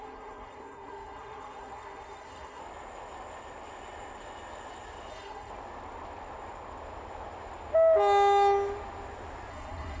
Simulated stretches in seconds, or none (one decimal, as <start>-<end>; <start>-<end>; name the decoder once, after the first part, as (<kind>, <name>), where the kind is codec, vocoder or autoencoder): 0.0-2.6 (codec, SNAC); 5.1-5.5; 9.5-10.0